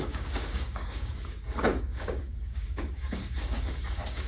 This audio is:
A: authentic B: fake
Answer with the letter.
B